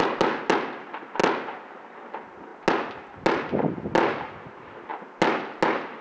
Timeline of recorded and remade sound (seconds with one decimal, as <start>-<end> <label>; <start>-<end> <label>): 0.0-6.0 recorded